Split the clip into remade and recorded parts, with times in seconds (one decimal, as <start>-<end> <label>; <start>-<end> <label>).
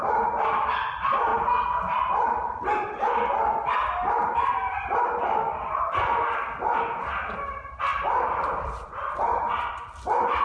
0.0-7.9 recorded; 7.9-9.7 remade; 9.7-10.4 recorded